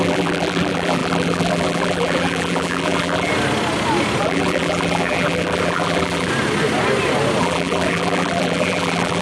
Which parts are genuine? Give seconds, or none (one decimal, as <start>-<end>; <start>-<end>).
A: 3.3-4.2; 6.3-7.4